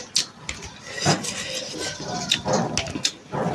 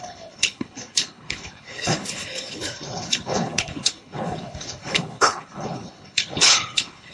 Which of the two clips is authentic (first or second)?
first